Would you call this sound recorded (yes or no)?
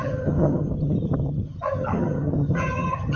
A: no